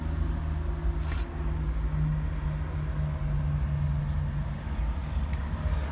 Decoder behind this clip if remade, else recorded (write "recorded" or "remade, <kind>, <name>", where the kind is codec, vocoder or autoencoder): recorded